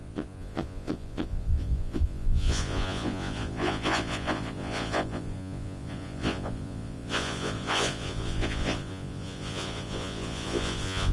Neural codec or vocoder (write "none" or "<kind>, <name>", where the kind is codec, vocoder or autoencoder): vocoder, Vocos